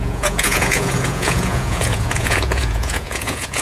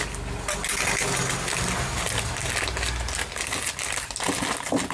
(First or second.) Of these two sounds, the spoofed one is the first